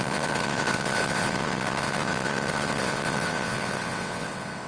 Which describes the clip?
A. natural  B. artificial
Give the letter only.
B